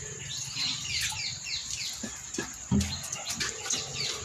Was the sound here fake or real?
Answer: real